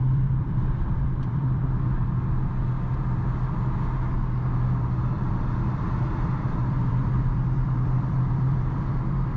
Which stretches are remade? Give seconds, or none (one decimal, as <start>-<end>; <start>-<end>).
0.0-1.6; 6.6-9.4